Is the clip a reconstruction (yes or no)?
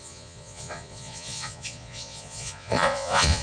yes